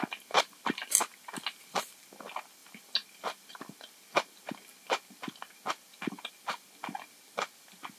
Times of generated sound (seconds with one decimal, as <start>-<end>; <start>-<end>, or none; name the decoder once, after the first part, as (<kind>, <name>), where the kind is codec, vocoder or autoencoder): none

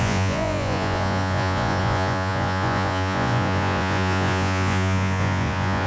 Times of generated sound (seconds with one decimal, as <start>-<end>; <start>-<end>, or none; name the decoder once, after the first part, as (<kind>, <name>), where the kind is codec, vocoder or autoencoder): 0.0-5.9 (vocoder, Vocos)

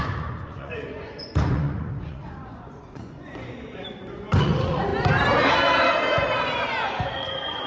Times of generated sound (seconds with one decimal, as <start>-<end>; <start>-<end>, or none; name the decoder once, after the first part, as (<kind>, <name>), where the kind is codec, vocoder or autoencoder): 0.0-4.9 (vocoder, Vocos); 7.1-7.7

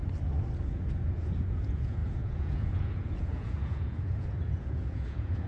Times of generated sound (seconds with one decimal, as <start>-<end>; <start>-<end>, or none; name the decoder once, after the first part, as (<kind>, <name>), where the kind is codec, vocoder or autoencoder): 0.7-5.5 (vocoder, Vocos)

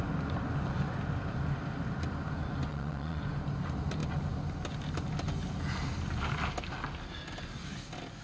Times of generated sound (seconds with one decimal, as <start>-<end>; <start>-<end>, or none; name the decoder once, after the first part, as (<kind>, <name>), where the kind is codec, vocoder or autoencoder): 2.7-3.2 (vocoder, Vocos)

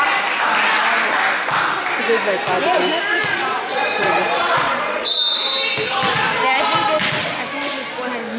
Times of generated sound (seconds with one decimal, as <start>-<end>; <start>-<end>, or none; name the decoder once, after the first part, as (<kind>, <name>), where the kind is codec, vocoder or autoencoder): 3.1-5.2 (vocoder, Vocos)

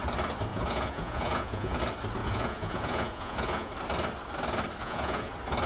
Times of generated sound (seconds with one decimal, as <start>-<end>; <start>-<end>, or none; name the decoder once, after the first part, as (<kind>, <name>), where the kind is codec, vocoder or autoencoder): 0.5-1.8 (vocoder, Vocos); 2.2-3.7; 4.8-5.3

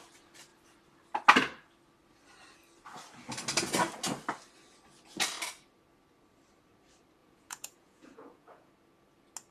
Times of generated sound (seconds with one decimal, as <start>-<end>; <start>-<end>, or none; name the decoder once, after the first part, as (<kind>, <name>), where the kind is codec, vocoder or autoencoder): 7.2-8.7 (vocoder, Vocos)